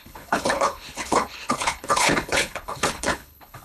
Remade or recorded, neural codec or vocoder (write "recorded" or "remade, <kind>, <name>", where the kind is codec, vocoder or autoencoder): remade, codec, HILCodec